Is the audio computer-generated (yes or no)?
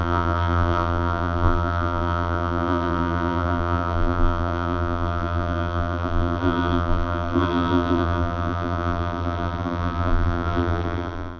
yes